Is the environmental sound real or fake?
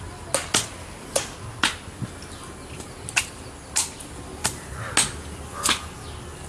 real